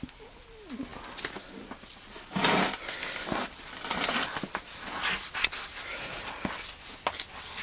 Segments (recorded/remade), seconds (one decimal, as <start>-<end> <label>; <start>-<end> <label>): 0.0-7.6 recorded